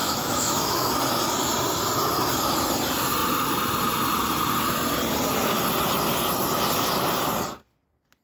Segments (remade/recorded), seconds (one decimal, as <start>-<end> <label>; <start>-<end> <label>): 0.0-0.9 remade; 0.9-8.2 recorded